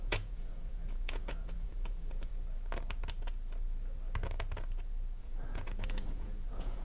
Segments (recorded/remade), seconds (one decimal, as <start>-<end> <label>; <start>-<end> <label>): 0.0-2.3 remade; 2.3-5.2 recorded; 5.2-6.8 remade